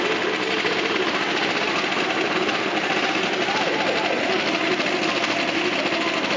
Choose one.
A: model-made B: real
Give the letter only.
B